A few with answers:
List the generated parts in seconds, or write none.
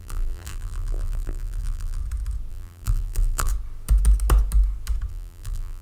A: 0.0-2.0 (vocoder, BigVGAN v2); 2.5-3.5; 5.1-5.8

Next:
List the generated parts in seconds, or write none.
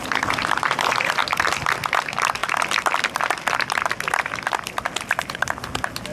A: 0.0-1.2 (vocoder, BigVGAN v2); 2.0-2.4; 5.2-6.1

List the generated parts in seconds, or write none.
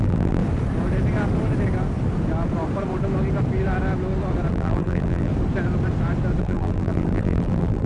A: 0.0-0.4 (vocoder, BigVGAN v2); 4.5-5.3; 6.4-7.9